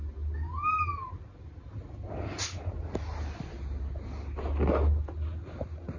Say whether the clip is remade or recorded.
recorded